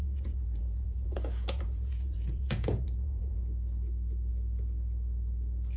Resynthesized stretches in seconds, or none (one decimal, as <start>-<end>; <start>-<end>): 0.0-3.4